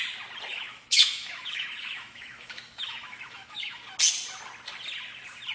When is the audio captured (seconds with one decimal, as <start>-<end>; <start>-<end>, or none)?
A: 0.0-0.5; 3.8-5.5